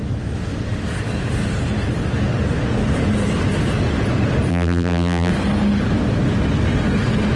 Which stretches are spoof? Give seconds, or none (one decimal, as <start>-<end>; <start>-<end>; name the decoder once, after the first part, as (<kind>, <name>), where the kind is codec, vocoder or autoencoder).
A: 4.5-5.3 (vocoder, BigVGAN v2)